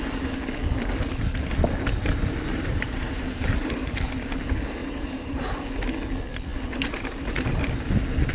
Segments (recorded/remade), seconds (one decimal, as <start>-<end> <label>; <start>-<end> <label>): 0.0-2.5 recorded; 2.5-4.1 remade; 4.1-4.8 recorded; 4.8-5.4 remade; 5.4-8.3 recorded